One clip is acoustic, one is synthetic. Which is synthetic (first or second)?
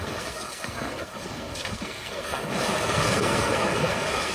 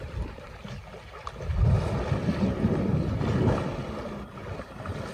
first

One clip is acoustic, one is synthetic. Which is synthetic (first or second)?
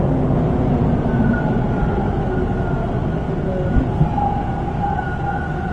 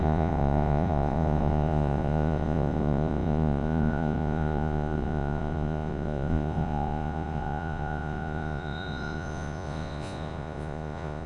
second